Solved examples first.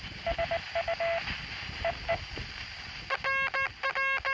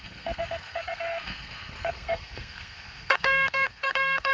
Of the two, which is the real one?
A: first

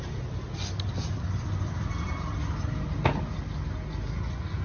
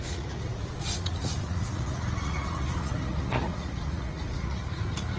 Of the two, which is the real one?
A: first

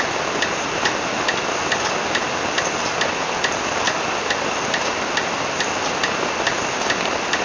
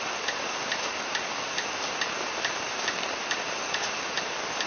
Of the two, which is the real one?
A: first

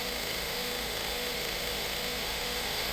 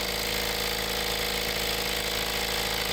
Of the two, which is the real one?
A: second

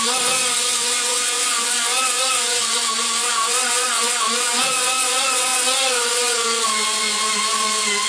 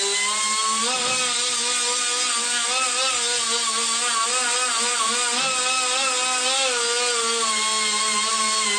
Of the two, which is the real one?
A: second